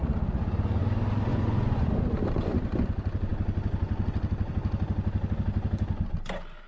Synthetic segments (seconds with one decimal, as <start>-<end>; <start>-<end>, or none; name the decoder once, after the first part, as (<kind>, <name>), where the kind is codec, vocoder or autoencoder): 1.3-1.9 (vocoder, Vocos)

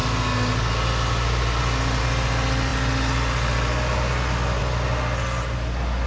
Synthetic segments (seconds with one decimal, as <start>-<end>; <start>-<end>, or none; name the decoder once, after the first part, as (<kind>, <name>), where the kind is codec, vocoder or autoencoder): none

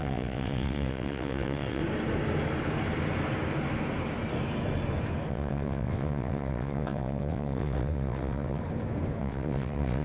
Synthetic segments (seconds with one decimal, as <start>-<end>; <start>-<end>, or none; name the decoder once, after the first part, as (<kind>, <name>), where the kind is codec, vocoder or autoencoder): 0.0-1.8 (vocoder, WaveNeXt); 5.3-8.6; 9.2-10.0

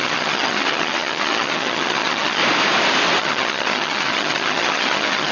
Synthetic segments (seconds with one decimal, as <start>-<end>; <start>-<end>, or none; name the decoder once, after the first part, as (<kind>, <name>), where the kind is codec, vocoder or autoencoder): 0.0-2.4 (vocoder, HiFi-GAN); 3.2-5.3

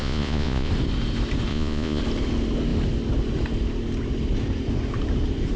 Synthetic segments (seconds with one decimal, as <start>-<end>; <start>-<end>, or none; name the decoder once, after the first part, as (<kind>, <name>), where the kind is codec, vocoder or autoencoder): 0.0-0.7 (vocoder, Vocos); 1.5-2.0